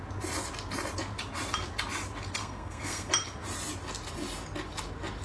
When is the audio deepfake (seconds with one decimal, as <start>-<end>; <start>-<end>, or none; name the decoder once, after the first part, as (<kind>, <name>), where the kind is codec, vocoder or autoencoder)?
2.4-3.1 (codec, SNAC)